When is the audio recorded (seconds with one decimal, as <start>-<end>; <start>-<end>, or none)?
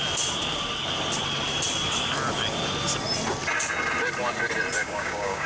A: 0.0-4.8